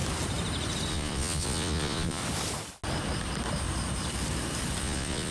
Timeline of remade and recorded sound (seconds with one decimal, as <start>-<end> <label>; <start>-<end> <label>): 0.0-0.9 recorded; 0.9-2.2 remade; 2.2-4.8 recorded; 4.8-5.3 remade